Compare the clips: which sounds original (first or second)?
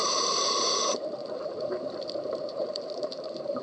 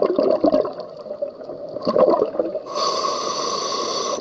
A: second